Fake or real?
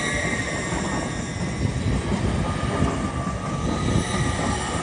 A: real